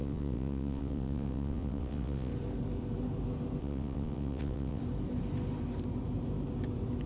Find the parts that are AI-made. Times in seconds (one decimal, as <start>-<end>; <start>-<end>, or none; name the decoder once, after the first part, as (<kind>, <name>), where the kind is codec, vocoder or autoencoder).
0.0-2.3 (vocoder, WaveNeXt); 3.6-4.8